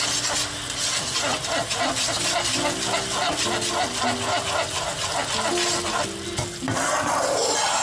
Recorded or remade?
recorded